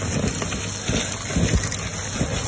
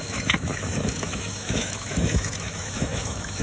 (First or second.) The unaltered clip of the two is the first